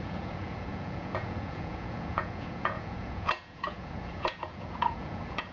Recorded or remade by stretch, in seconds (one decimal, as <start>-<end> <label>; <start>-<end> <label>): 0.0-5.5 remade